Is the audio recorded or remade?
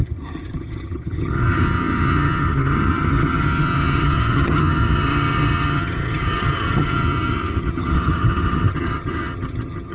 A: remade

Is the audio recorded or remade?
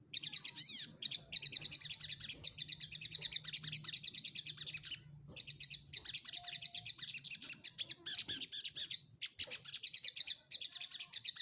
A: recorded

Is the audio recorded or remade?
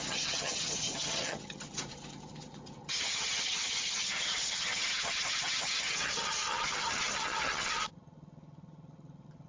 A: remade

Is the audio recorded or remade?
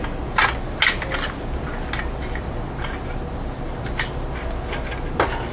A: recorded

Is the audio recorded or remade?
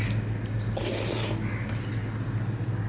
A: recorded